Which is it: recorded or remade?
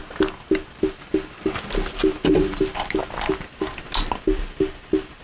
recorded